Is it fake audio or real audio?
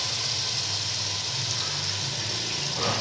real